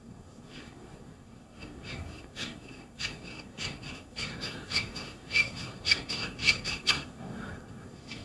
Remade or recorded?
remade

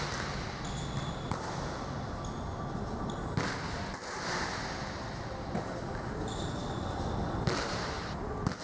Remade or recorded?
recorded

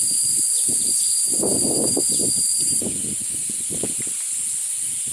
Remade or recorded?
recorded